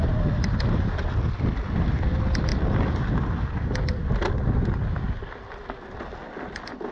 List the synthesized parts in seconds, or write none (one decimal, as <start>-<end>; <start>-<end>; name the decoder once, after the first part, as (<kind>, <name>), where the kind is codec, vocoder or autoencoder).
none